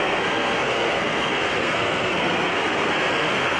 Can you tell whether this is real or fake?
fake